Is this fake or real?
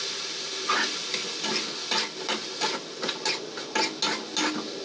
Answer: real